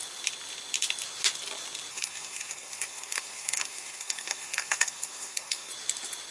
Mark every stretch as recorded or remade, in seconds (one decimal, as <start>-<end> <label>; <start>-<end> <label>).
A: 0.0-1.9 recorded; 1.9-5.7 remade; 5.7-6.3 recorded